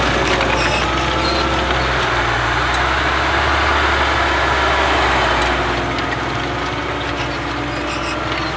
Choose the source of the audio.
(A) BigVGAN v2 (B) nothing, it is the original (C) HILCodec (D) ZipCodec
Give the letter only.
B